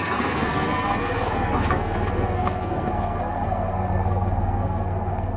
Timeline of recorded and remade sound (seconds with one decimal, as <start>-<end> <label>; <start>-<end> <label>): 0.0-5.4 remade